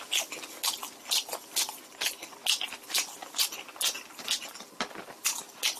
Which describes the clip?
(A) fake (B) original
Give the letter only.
B